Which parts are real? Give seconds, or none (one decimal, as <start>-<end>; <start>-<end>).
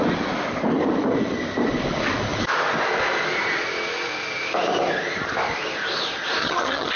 0.0-6.4